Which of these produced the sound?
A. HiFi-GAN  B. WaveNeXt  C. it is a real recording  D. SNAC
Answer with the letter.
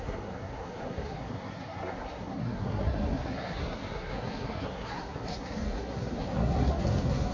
D